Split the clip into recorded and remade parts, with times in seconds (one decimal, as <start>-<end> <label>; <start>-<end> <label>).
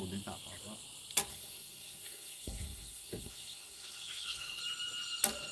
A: 0.0-1.3 recorded; 1.3-4.6 remade; 4.6-5.5 recorded